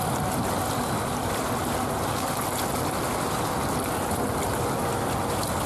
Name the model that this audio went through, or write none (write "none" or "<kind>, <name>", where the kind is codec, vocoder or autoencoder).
none